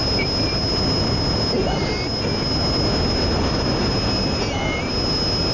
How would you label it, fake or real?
real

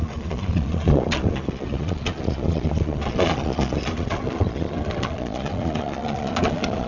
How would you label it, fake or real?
fake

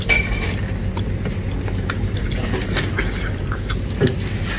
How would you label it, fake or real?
real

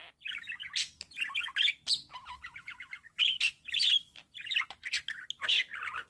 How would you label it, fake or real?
real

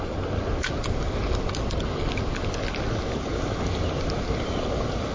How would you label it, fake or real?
real